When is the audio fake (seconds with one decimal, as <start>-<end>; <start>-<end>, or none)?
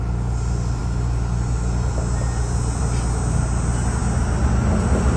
none